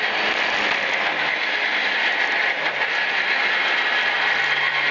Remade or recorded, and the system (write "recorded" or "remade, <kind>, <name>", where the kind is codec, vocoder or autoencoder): recorded